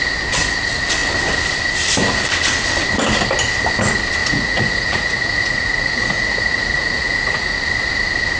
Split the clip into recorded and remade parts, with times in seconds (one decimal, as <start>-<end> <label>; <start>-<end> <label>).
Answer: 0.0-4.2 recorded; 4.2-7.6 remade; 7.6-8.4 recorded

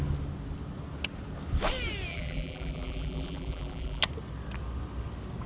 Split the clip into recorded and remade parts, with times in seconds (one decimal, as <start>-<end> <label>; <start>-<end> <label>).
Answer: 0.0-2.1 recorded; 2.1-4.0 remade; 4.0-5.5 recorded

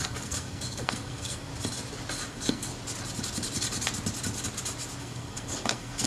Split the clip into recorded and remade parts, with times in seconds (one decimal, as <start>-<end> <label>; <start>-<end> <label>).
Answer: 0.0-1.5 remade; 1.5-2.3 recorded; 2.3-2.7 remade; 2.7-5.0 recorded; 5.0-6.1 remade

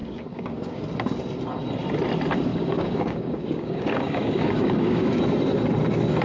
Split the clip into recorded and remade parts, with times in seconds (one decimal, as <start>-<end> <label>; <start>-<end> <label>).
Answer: 0.0-0.8 remade; 0.8-2.5 recorded; 2.5-5.2 remade; 5.2-6.2 recorded

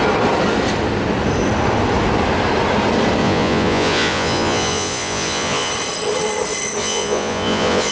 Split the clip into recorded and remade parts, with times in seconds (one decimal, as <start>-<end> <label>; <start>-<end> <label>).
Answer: 0.0-3.2 recorded; 3.2-5.7 remade; 5.7-6.8 recorded; 6.8-7.9 remade